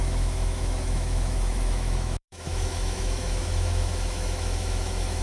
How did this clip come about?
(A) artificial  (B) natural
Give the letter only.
A